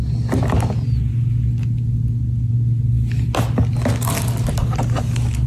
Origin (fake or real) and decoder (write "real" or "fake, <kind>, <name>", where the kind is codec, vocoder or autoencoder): real